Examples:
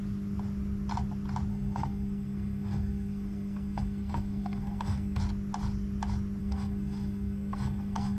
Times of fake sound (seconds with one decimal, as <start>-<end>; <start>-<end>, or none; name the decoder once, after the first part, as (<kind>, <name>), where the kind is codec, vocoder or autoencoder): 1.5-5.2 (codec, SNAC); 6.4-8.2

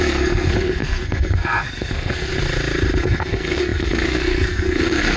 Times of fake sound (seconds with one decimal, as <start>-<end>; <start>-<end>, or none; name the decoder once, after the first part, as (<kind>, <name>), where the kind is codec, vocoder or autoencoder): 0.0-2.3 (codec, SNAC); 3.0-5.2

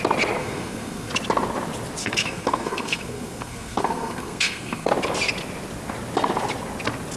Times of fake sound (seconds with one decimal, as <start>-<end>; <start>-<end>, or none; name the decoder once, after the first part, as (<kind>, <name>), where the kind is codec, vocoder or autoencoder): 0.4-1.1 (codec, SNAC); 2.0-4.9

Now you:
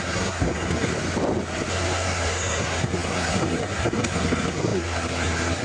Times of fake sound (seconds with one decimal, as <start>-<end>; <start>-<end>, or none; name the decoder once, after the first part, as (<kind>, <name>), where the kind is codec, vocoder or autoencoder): 0.0-0.9 (codec, SNAC); 1.7-5.6